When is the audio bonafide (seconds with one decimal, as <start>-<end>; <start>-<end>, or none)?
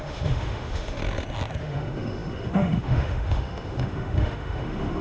1.0-1.6